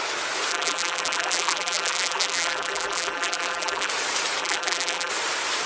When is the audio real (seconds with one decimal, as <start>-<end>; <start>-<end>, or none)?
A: 0.0-0.5; 3.9-4.4; 5.1-5.7